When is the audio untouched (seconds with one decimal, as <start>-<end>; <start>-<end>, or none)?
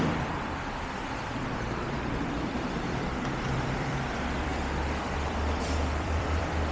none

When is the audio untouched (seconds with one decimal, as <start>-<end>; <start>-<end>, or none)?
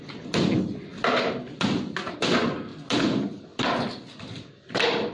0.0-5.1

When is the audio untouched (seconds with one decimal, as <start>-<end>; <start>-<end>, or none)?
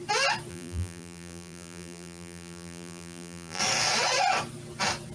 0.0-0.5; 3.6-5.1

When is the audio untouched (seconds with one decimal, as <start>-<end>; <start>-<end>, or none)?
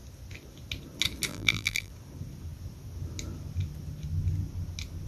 0.0-1.3; 1.9-5.1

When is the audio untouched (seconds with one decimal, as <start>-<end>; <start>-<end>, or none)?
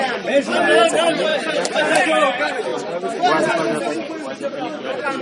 0.0-5.2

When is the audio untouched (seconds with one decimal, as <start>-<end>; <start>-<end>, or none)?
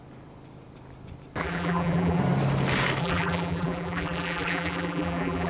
0.0-1.4; 2.2-3.0